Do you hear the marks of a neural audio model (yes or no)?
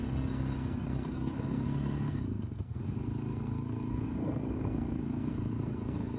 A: yes